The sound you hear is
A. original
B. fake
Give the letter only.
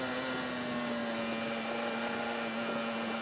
A